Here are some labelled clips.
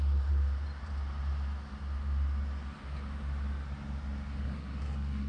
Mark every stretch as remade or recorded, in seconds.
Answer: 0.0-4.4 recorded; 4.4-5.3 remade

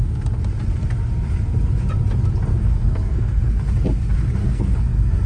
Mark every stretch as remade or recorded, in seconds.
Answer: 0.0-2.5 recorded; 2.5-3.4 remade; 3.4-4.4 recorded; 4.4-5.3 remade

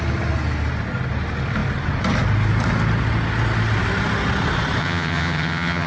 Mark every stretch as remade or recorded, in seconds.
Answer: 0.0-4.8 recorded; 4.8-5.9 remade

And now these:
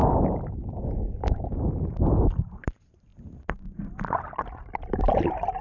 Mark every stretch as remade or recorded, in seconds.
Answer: 0.0-1.3 recorded; 1.3-3.1 remade; 3.1-4.6 recorded; 4.6-5.6 remade

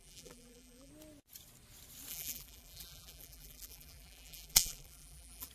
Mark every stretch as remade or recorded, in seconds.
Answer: 0.0-0.9 remade; 0.9-2.1 recorded; 2.1-5.5 remade

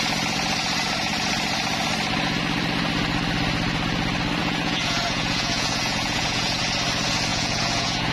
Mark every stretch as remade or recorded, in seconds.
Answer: 0.0-4.4 recorded; 4.4-6.6 remade; 6.6-7.3 recorded; 7.3-8.1 remade

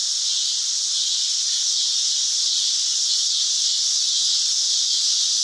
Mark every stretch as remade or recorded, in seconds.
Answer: 0.0-5.4 recorded